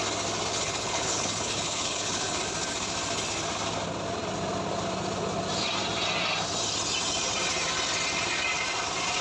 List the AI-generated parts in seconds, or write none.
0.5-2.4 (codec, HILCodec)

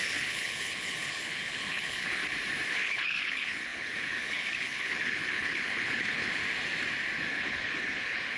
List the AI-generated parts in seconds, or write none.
0.0-2.2 (codec, HILCodec); 2.7-6.4; 7.3-8.4